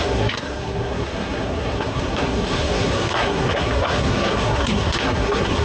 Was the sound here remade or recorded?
remade